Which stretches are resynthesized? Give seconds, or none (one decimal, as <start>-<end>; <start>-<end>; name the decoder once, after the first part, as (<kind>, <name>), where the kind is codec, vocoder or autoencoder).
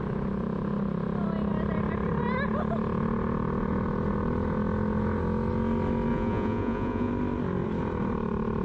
6.1-7.1 (vocoder, Vocos)